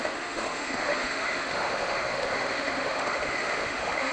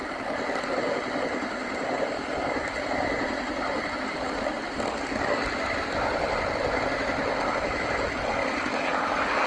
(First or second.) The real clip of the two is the second